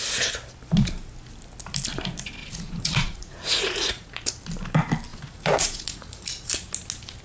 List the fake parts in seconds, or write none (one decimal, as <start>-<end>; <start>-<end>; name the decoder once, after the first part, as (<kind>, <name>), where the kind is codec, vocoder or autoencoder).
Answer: 2.4-4.3 (vocoder, Vocos); 5.1-6.5